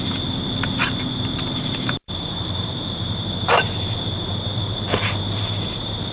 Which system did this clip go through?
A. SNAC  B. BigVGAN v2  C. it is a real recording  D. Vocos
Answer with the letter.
B